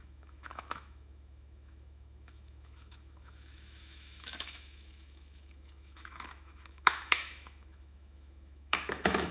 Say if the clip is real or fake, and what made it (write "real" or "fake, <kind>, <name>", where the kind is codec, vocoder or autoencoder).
fake, autoencoder, DAC-VAE